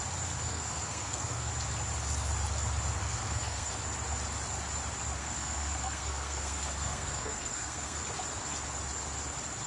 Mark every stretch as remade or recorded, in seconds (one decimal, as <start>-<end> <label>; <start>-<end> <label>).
0.0-0.5 recorded; 0.5-1.5 remade; 1.5-3.0 recorded; 3.0-3.7 remade; 3.7-5.2 recorded; 5.2-8.0 remade; 8.0-9.7 recorded